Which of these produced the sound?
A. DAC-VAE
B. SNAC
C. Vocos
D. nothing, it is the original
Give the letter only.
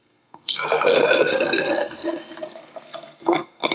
B